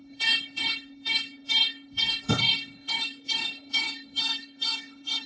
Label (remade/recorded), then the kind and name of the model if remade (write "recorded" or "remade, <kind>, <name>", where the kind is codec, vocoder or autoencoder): remade, codec, HILCodec